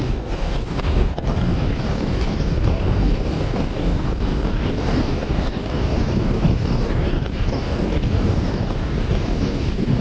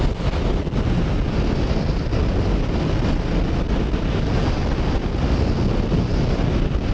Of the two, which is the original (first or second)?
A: second